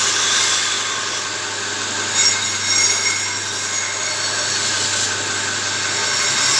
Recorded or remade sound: recorded